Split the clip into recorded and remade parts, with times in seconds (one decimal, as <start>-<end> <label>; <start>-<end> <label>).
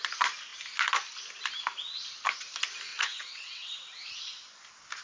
0.0-2.9 recorded; 2.9-3.7 remade; 3.7-5.0 recorded